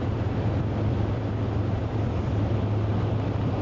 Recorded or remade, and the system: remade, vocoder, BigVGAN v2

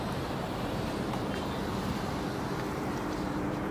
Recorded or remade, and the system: remade, vocoder, BigVGAN v2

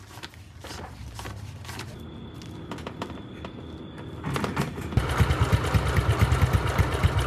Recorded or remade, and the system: recorded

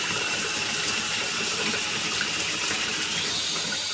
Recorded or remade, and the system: remade, vocoder, BigVGAN v2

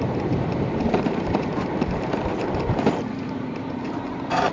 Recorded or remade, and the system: remade, vocoder, BigVGAN v2